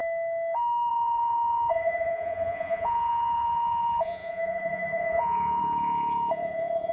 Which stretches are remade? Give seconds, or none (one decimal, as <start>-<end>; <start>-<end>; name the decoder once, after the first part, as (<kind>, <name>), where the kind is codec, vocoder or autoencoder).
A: 0.9-6.9 (vocoder, Vocos)